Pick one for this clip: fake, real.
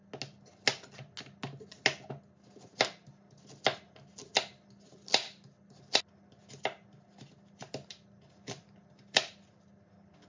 real